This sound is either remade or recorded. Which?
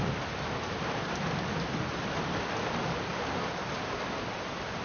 remade